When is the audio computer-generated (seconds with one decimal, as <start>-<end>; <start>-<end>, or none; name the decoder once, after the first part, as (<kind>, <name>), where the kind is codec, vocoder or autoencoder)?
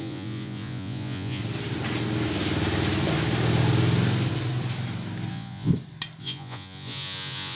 0.0-1.4 (vocoder, Vocos); 5.3-5.7; 6.2-7.5